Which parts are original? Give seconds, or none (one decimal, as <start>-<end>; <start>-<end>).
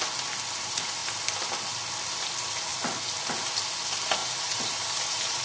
0.0-4.2